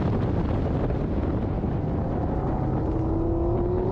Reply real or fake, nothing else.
real